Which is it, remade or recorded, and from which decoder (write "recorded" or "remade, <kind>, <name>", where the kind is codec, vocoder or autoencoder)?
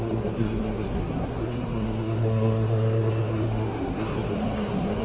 remade, codec, SNAC